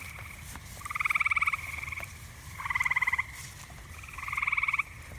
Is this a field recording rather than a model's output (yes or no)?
yes